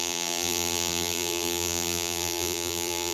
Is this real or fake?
fake